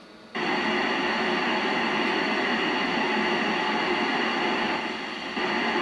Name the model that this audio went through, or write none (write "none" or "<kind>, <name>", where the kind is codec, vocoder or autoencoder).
none